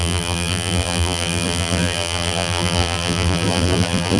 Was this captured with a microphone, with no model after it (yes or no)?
no